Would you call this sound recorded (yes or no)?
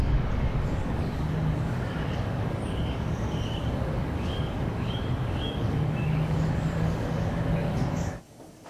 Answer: no